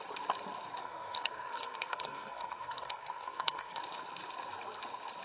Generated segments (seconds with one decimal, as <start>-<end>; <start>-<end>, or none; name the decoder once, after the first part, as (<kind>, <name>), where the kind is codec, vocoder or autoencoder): 0.8-3.8 (codec, SNAC)